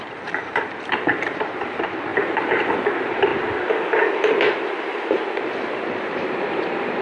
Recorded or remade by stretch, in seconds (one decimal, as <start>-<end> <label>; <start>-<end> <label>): 0.0-3.3 remade; 3.3-6.2 recorded; 6.2-7.0 remade